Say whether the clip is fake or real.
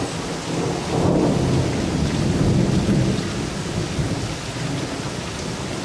real